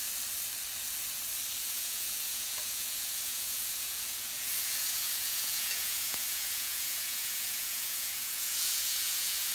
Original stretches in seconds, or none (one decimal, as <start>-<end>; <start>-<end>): 0.0-1.6